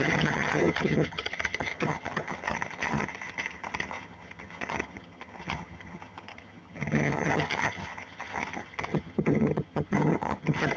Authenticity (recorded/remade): remade